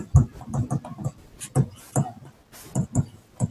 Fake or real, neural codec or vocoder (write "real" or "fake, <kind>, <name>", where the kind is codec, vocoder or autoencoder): real